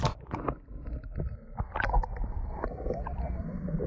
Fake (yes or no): no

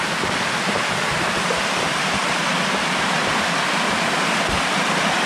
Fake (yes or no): yes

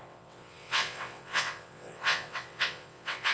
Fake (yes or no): yes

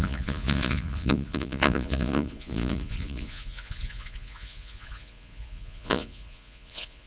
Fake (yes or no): yes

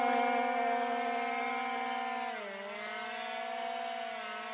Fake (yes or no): no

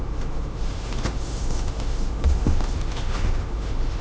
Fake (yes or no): yes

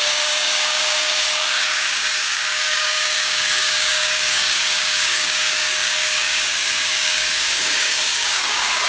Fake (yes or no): yes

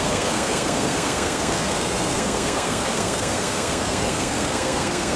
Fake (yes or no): yes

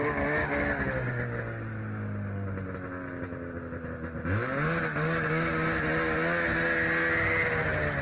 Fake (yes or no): no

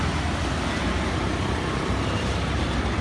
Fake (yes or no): no